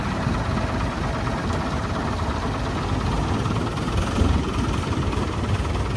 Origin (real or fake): real